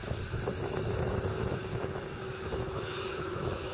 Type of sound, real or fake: fake